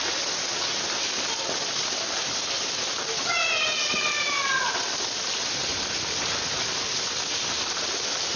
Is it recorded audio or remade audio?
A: recorded